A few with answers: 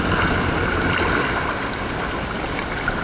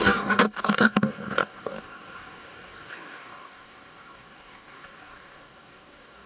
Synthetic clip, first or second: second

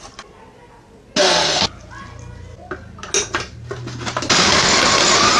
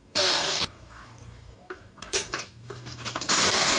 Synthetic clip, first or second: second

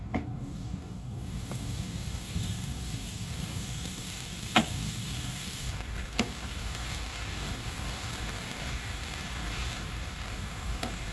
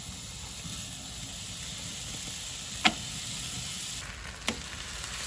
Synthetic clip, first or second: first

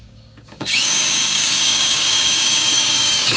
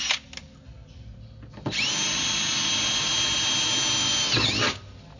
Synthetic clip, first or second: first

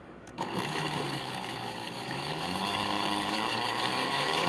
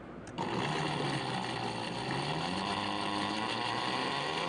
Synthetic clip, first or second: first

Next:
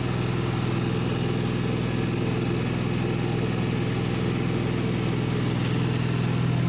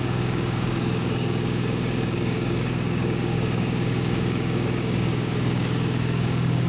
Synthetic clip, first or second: second